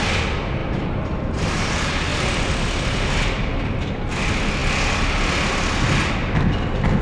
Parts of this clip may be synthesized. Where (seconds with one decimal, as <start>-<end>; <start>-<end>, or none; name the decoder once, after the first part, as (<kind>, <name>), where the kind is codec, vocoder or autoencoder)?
none